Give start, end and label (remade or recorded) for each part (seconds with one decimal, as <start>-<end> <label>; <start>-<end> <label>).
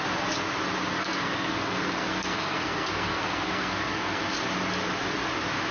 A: 0.0-0.9 recorded; 0.9-4.3 remade; 4.3-5.7 recorded